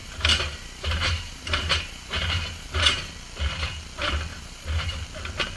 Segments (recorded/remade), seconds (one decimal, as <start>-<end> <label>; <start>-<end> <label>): 0.0-3.1 remade; 3.1-4.3 recorded; 4.3-5.0 remade; 5.0-5.6 recorded

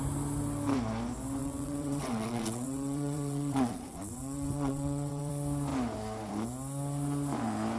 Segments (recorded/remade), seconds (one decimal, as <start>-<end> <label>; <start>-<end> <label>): 0.0-1.4 recorded; 1.4-5.3 remade; 5.3-7.8 recorded

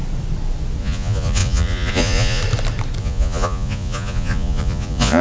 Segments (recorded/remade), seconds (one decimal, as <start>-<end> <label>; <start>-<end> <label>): 0.0-0.8 recorded; 0.8-2.4 remade; 2.4-3.0 recorded; 3.0-5.2 remade

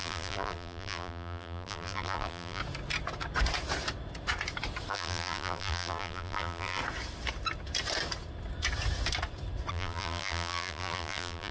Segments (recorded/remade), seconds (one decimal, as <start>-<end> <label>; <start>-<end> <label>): 0.0-2.6 remade; 2.6-4.9 recorded; 4.9-6.8 remade; 6.8-9.7 recorded; 9.7-11.5 remade

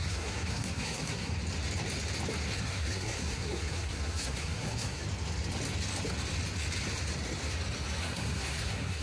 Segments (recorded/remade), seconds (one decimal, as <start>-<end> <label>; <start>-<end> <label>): 0.0-1.3 remade; 1.3-2.6 recorded; 2.6-5.0 remade; 5.0-8.0 recorded; 8.0-9.0 remade

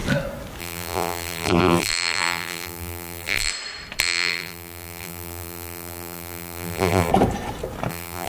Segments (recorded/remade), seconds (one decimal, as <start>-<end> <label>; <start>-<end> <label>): 0.0-0.6 recorded; 0.6-3.5 remade; 3.5-4.0 recorded; 4.0-7.1 remade; 7.1-7.9 recorded; 7.9-8.3 remade

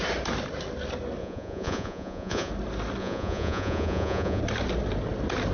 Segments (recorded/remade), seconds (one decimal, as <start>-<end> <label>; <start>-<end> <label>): 0.0-1.2 recorded; 1.2-2.5 remade; 2.5-3.0 recorded; 3.0-4.4 remade; 4.4-5.5 recorded